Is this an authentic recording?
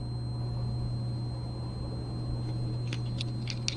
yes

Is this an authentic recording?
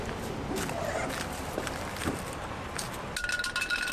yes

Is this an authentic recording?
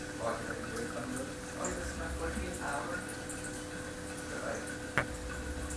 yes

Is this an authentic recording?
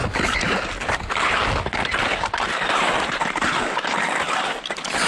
yes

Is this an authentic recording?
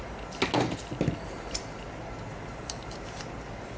yes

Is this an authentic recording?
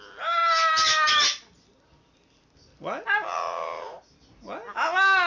yes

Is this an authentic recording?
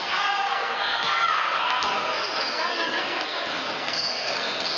no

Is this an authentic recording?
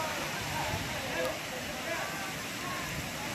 yes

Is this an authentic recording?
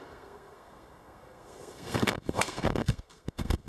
no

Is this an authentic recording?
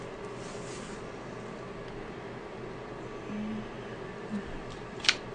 yes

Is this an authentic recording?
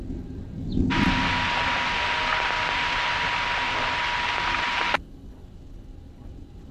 yes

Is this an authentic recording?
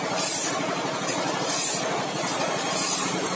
yes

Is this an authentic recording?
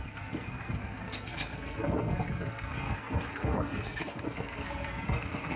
no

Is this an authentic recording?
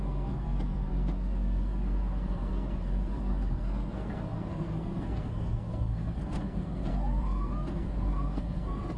no